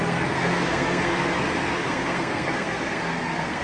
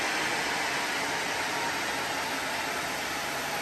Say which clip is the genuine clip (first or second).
second